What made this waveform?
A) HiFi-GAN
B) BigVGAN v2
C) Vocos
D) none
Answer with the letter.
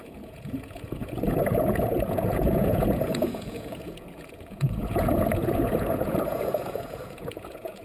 C